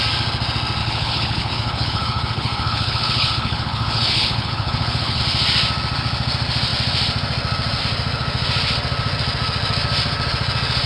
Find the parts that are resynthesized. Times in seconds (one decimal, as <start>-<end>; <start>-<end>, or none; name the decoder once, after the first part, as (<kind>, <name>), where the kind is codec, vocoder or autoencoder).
0.8-5.2 (codec, HILCodec)